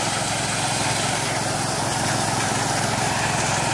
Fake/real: real